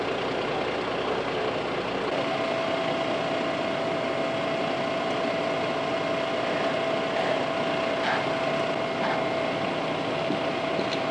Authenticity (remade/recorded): recorded